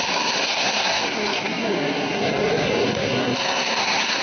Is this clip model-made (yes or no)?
yes